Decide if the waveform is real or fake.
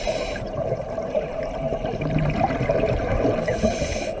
fake